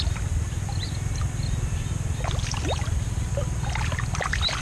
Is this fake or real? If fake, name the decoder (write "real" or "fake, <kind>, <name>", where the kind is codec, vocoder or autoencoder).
real